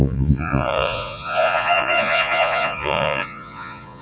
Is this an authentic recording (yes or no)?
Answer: no